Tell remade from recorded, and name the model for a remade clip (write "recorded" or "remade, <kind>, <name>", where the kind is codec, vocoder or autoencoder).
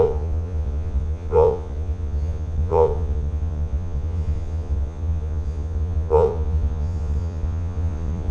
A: remade, vocoder, Vocos